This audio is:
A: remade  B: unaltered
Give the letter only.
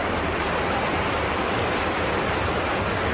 B